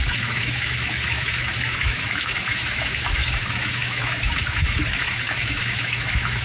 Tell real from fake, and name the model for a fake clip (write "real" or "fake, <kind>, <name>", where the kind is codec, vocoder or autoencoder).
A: fake, autoencoder, DAC-VAE